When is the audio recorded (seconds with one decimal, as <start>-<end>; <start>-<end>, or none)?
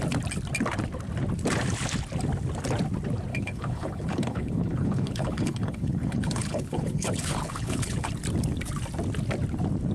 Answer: 0.0-3.3; 8.1-9.9